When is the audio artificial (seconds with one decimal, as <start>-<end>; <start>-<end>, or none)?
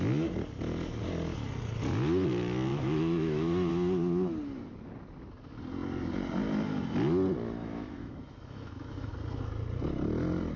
2.7-3.7; 7.6-9.1